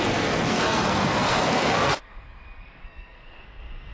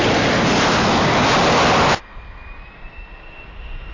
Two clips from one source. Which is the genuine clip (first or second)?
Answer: second